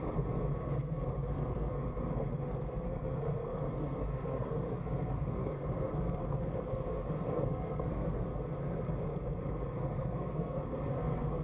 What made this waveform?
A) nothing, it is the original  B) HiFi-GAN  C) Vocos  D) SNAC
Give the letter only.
D